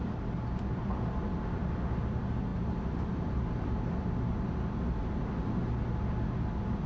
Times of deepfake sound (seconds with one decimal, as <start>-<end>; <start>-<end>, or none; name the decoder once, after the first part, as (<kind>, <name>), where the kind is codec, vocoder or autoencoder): none